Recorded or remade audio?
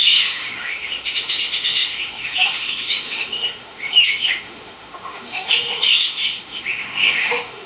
remade